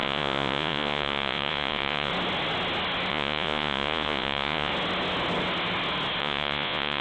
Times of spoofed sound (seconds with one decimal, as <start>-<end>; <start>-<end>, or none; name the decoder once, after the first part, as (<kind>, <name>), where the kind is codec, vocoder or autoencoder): 0.0-2.1 (vocoder, Vocos); 3.1-4.7; 6.2-7.0